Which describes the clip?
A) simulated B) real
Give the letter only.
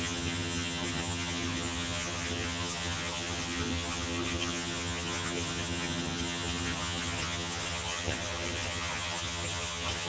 A